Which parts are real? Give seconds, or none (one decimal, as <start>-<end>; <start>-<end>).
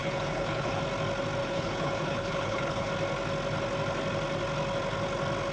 0.8-1.4; 2.9-5.5